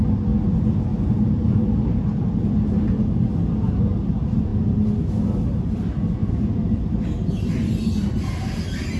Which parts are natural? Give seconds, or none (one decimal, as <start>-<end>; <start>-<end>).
0.0-0.9; 1.6-6.2; 7.5-9.0